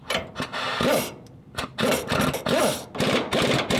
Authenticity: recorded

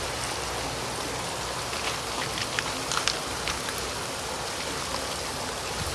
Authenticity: recorded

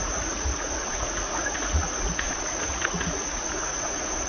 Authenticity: remade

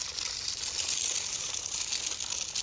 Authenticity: recorded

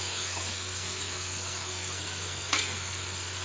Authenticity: remade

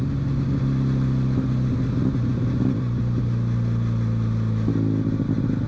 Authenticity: recorded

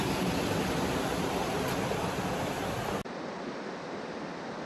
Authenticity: recorded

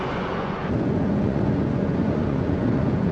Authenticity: remade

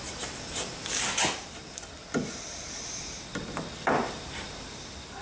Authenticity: recorded